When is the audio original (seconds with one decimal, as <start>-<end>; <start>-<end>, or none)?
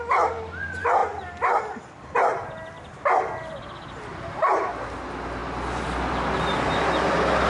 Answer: 0.0-7.5